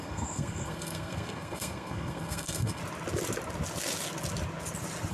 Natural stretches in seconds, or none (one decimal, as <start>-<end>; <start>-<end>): 2.8-5.1